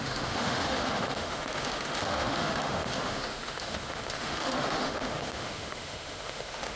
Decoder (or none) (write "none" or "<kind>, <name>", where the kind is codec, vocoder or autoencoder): autoencoder, DAC-VAE